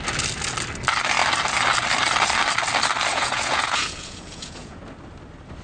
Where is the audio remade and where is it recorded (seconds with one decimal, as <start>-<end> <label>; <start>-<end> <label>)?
0.0-3.1 recorded; 3.1-4.8 remade; 4.8-5.6 recorded